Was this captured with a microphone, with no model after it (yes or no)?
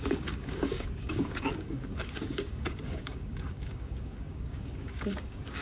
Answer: no